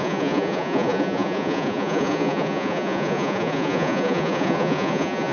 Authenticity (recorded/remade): remade